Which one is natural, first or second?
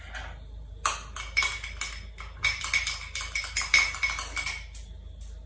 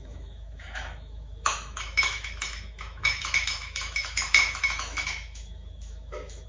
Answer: first